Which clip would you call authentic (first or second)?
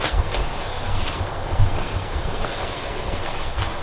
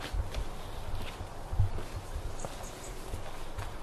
second